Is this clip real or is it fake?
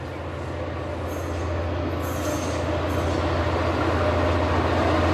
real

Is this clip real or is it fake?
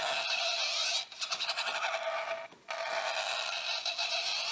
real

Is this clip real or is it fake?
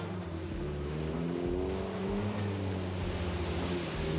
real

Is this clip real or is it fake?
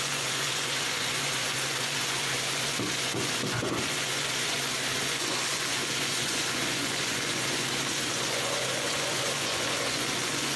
fake